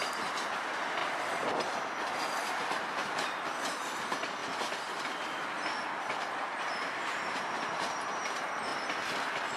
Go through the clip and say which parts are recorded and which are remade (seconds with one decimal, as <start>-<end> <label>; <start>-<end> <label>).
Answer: 0.0-1.0 remade; 1.0-2.6 recorded; 2.6-4.4 remade; 4.4-6.0 recorded; 6.0-8.7 remade; 8.7-9.6 recorded